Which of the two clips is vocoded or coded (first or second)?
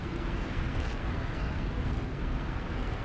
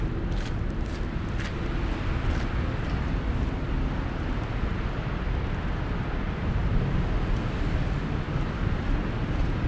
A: first